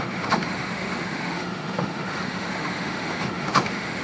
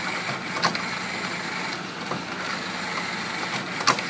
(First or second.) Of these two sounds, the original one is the second